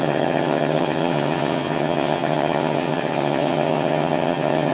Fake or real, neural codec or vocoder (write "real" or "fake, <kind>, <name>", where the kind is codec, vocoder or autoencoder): fake, vocoder, HiFi-GAN